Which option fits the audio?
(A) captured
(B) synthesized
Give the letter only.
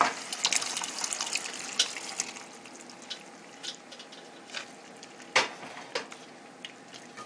A